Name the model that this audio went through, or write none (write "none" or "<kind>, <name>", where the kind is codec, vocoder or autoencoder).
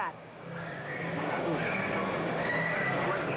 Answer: codec, DAC